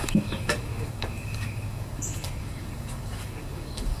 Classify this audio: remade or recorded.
remade